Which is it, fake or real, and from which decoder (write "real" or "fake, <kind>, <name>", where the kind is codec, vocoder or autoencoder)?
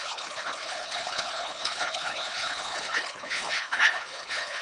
fake, codec, HILCodec